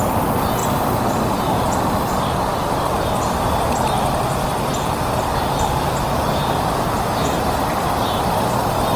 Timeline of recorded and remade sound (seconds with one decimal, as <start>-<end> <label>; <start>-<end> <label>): 0.0-9.0 recorded

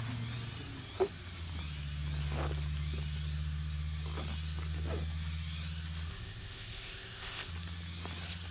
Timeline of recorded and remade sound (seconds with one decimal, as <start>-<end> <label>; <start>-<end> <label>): 0.0-6.1 recorded; 6.1-7.5 remade; 7.5-8.5 recorded

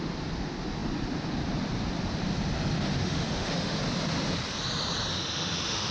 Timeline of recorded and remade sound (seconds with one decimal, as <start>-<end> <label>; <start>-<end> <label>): 0.0-3.0 recorded; 3.0-3.8 remade; 3.8-5.1 recorded; 5.1-5.9 remade

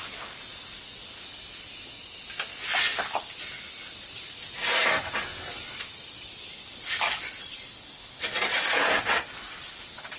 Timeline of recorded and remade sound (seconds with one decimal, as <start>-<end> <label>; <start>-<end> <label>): 0.0-5.3 recorded; 5.3-9.1 remade; 9.1-10.2 recorded

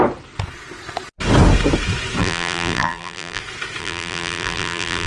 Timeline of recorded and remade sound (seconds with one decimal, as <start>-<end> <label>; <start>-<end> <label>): 0.0-2.2 recorded; 2.2-3.4 remade; 3.4-3.8 recorded; 3.8-5.1 remade

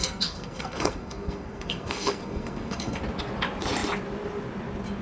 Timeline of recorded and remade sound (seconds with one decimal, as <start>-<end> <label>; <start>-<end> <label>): 0.0-3.0 remade; 3.0-5.0 recorded

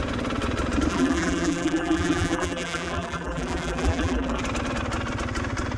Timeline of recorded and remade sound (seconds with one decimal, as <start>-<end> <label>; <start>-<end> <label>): 0.0-0.9 recorded; 0.9-4.4 remade; 4.4-5.8 recorded